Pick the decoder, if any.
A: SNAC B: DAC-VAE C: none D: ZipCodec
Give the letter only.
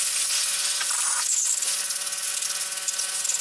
C